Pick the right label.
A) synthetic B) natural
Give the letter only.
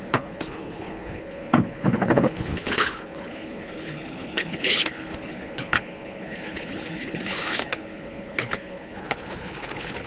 A